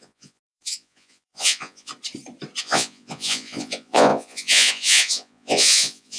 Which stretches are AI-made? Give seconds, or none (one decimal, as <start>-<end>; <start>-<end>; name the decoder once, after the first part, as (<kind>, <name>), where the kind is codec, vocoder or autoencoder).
0.0-1.9 (vocoder, Vocos); 2.6-6.2